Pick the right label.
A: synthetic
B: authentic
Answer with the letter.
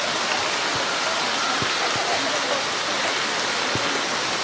B